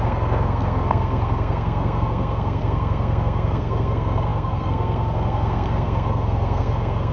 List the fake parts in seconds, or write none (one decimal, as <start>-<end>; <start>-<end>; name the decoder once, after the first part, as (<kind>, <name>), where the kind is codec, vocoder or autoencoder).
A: 0.0-7.1 (codec, SNAC)